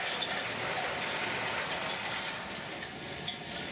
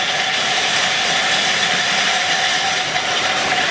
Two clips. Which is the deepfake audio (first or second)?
second